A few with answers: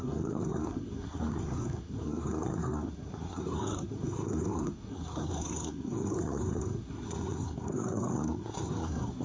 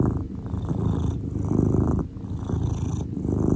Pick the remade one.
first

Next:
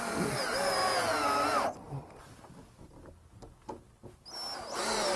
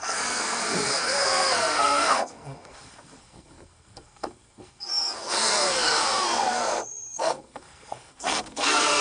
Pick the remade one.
second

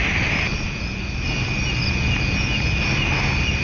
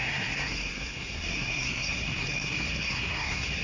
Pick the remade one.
second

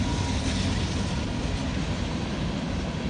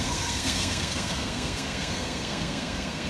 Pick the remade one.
second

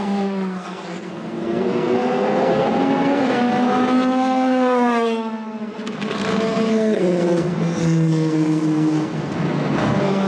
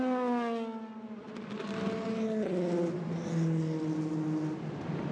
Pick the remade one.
first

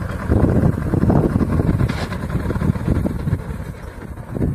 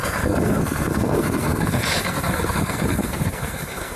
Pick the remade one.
second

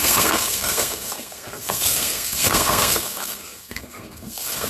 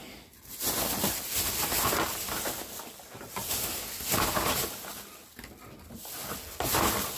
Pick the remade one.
first